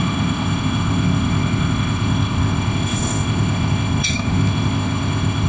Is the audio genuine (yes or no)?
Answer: no